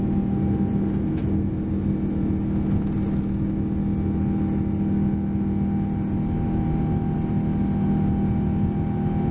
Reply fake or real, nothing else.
real